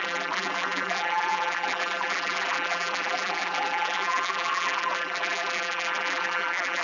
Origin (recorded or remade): remade